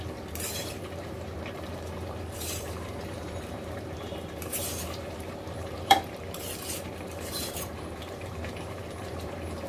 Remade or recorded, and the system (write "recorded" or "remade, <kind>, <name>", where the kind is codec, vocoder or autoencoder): remade, vocoder, BigVGAN v2